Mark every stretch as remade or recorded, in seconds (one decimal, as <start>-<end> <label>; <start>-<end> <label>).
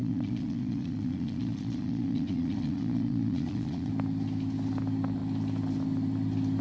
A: 0.0-3.9 remade; 3.9-6.6 recorded